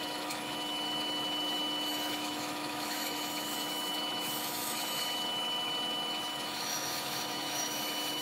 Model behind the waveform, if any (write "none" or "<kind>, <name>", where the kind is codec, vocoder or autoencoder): autoencoder, DAC-VAE